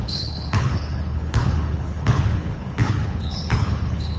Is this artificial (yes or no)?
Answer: yes